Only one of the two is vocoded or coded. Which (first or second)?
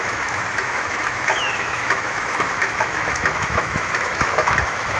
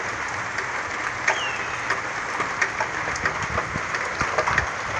first